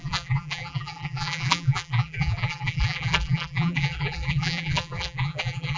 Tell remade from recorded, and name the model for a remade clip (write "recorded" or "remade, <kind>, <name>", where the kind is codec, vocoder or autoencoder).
remade, vocoder, BigVGAN v2